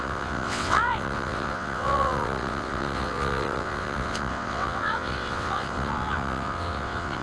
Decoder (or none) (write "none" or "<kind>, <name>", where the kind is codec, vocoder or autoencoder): vocoder, WaveNeXt